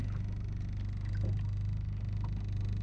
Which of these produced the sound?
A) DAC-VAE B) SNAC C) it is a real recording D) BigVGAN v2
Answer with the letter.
C